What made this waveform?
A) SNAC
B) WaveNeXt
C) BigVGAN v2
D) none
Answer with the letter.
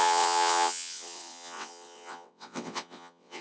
B